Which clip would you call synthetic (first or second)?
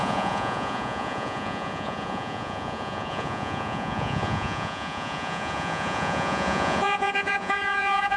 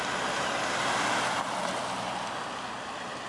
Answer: first